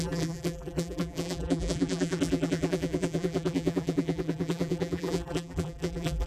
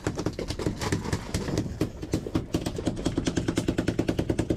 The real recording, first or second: second